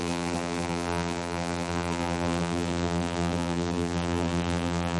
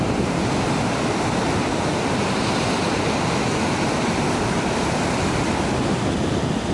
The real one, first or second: second